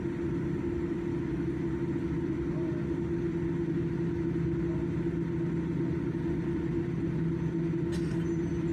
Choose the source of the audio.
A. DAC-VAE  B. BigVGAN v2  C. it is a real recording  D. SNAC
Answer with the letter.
C